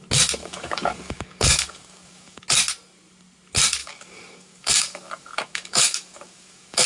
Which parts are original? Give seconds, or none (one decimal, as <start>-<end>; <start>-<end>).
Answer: 0.0-0.4; 2.4-3.8